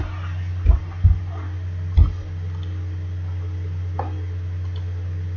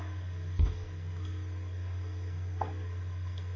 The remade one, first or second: second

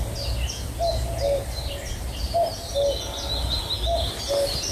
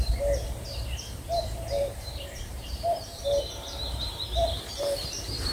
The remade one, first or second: second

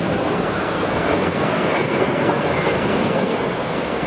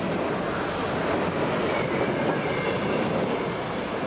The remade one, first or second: first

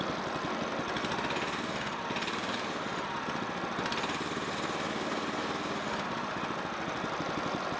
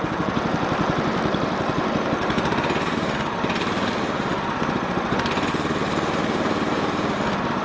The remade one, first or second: second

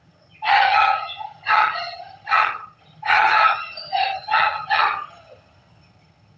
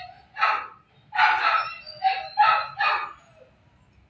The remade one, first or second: first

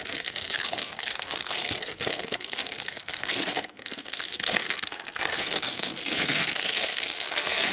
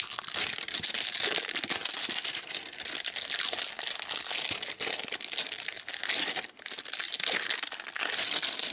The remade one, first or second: first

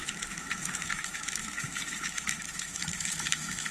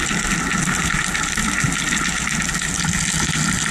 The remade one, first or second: first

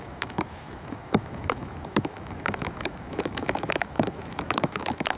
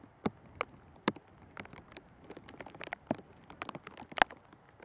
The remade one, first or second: first